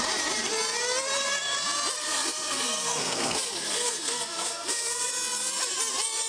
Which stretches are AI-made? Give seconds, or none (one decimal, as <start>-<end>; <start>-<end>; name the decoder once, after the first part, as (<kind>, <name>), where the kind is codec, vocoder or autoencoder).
2.0-5.1 (codec, SNAC)